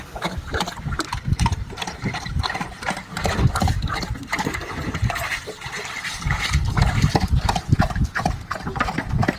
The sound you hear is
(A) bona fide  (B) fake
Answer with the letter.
A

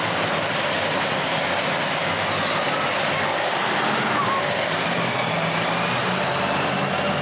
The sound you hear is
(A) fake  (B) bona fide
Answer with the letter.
B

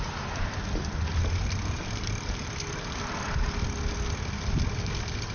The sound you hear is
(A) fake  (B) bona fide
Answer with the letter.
B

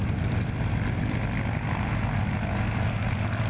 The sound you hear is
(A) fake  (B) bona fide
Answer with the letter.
B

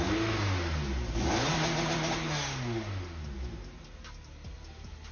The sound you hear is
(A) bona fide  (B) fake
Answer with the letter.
A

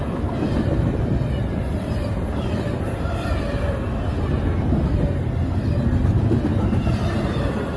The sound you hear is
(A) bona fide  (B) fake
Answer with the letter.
A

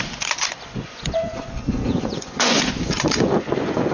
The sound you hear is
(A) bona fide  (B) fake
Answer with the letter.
B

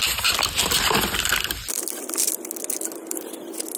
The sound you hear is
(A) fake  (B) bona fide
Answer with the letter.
B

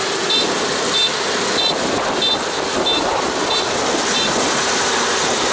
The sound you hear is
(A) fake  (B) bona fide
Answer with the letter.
B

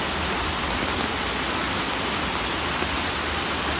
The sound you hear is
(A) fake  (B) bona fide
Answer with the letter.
B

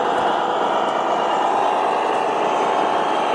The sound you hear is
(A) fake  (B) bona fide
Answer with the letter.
B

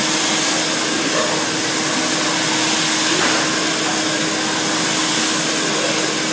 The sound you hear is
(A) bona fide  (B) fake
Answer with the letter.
A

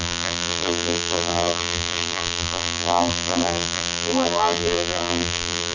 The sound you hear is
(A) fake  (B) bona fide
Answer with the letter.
A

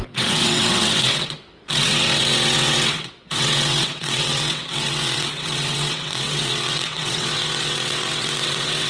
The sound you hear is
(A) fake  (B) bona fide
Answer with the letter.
A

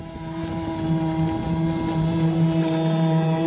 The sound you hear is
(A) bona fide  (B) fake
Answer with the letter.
A